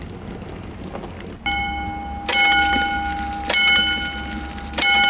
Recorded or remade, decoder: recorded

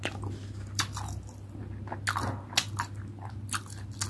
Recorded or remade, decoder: recorded